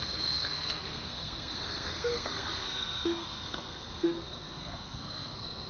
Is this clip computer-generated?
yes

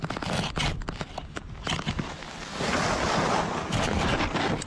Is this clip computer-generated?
no